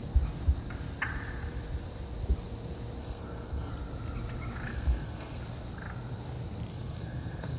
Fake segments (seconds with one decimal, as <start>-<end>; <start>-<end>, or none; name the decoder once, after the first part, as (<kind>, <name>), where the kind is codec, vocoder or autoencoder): 3.0-3.7 (codec, SNAC); 4.7-5.4; 6.7-7.6